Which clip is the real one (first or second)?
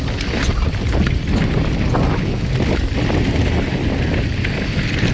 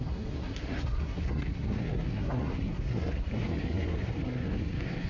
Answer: first